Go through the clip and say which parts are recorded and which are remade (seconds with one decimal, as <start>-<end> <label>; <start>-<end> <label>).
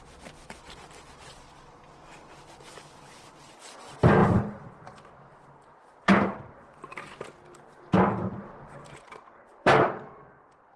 0.0-10.8 recorded